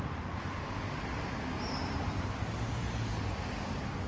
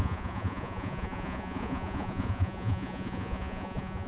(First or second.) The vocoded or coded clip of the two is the second